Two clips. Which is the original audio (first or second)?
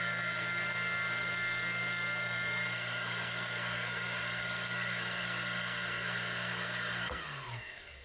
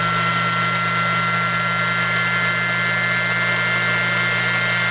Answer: second